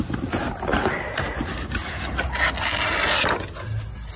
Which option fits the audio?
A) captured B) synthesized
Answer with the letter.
A